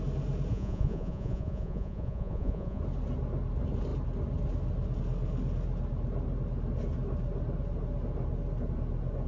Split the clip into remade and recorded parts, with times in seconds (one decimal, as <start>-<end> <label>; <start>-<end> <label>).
0.0-0.5 recorded; 0.5-2.8 remade; 2.8-9.3 recorded